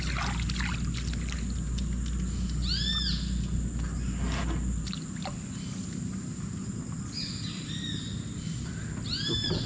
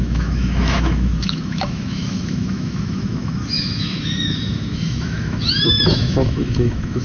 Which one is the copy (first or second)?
second